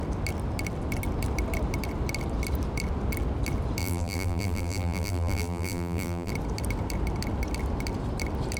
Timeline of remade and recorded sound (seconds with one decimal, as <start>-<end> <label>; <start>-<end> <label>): 0.0-3.8 recorded; 3.8-6.3 remade; 6.3-8.6 recorded